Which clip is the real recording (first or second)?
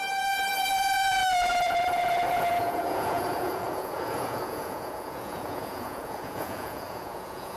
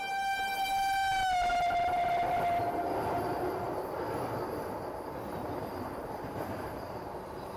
second